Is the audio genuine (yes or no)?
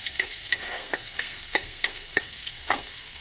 no